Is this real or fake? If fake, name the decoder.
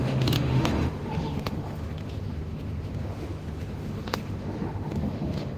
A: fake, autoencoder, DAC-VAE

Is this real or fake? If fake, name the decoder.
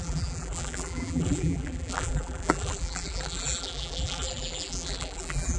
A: fake, vocoder, BigVGAN v2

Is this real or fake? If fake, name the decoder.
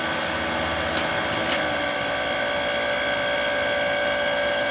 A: real